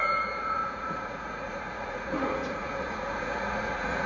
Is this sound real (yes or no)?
no